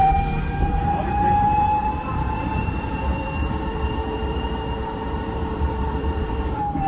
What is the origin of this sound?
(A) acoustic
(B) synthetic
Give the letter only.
B